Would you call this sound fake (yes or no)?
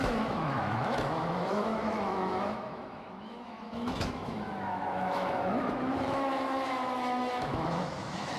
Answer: yes